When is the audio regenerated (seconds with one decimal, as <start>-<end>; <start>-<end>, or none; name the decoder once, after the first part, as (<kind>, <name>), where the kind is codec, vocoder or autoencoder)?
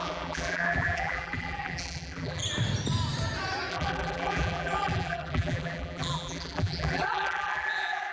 0.0-2.4 (vocoder, BigVGAN v2); 3.7-8.1